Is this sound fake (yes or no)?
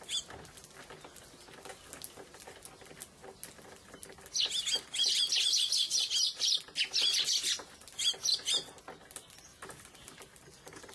no